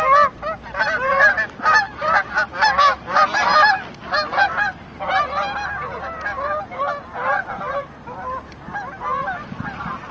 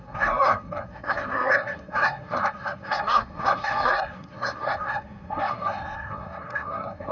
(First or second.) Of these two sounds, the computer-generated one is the second